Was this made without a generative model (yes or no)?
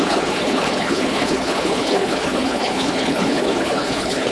no